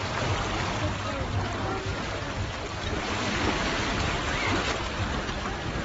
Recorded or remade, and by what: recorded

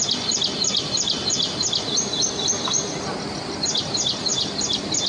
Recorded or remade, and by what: recorded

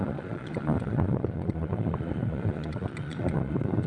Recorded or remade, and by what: remade, vocoder, Vocos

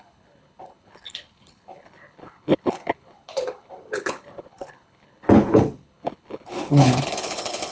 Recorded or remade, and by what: remade, codec, HILCodec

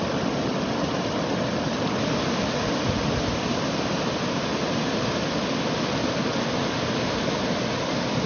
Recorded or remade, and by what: recorded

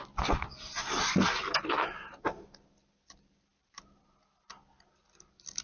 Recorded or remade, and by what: recorded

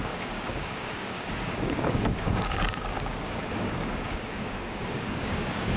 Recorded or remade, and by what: remade, codec, DAC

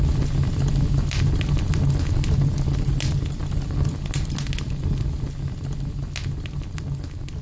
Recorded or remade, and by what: recorded